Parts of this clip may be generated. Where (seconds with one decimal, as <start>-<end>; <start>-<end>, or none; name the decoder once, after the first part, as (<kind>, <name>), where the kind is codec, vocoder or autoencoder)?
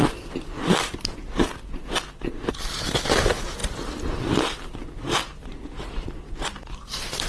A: 0.0-1.2 (vocoder, BigVGAN v2); 2.9-7.3